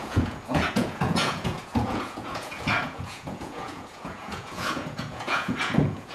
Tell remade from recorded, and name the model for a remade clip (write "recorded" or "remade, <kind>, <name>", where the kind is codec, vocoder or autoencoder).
remade, vocoder, Vocos